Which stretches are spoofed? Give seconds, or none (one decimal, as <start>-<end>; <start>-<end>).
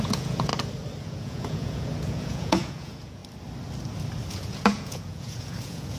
0.0-0.5; 1.0-3.2; 4.3-6.0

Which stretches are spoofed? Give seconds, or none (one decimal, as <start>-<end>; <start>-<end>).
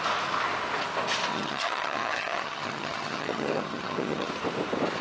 1.3-4.3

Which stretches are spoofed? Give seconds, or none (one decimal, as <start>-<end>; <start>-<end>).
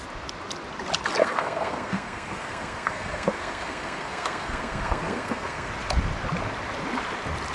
1.2-5.7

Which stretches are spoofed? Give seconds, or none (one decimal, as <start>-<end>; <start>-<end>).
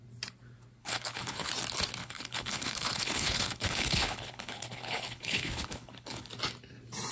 0.8-1.5; 2.0-6.3